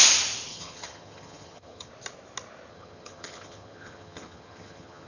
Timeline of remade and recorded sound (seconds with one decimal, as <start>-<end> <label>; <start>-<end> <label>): 0.0-0.5 recorded; 0.5-1.9 remade; 1.9-2.7 recorded; 2.7-5.1 remade